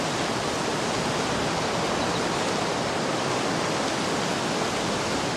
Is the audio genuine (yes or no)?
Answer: yes